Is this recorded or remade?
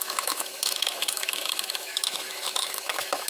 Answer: remade